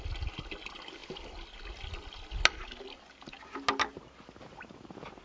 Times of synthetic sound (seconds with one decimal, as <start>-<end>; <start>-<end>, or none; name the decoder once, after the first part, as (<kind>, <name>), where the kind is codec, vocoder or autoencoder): none